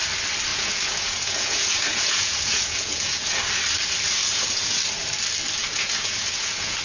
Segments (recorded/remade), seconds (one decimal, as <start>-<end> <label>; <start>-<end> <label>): 0.0-0.5 recorded; 0.5-3.5 remade; 3.5-4.2 recorded; 4.2-4.8 remade; 4.8-5.6 recorded; 5.6-6.8 remade